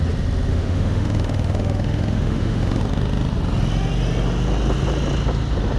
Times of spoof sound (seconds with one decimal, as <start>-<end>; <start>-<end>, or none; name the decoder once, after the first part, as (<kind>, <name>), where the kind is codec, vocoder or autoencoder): 0.5-2.8 (autoencoder, DAC-VAE)